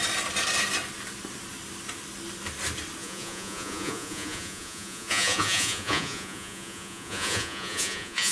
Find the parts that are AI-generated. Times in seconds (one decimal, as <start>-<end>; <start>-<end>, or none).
3.0-8.3